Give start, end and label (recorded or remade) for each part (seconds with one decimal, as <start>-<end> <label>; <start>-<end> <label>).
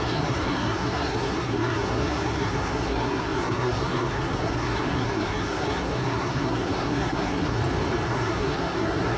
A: 0.0-7.6 remade; 7.6-8.1 recorded; 8.1-9.2 remade